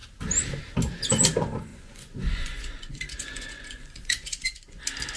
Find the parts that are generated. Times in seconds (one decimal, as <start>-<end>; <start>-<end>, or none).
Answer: 1.7-4.8